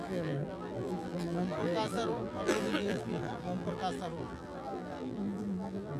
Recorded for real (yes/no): no